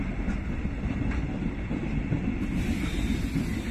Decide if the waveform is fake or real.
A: real